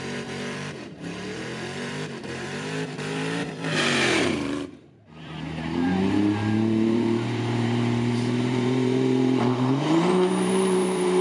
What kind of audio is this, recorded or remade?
remade